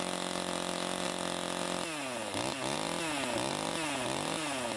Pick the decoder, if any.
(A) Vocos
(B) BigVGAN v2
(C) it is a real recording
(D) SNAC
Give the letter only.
C